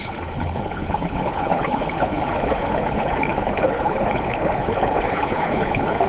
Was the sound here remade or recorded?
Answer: remade